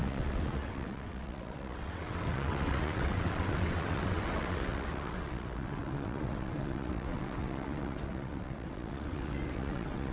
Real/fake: fake